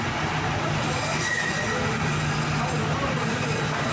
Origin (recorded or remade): recorded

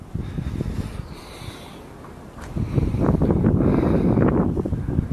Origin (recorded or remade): recorded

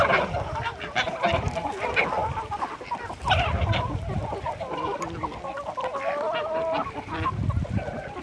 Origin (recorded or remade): recorded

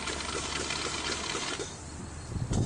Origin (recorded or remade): recorded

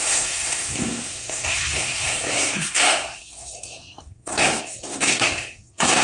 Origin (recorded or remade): remade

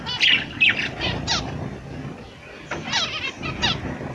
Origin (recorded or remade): recorded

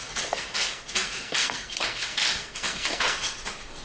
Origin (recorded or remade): remade